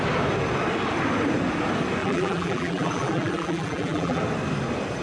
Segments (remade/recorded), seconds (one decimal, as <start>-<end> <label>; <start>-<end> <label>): 0.0-2.0 recorded; 2.0-4.2 remade; 4.2-5.0 recorded